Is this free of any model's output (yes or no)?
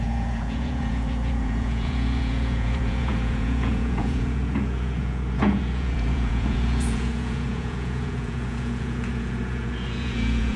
no